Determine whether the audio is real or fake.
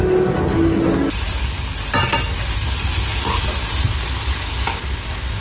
real